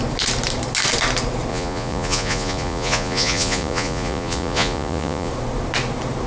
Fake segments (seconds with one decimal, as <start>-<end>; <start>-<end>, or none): 1.5-5.3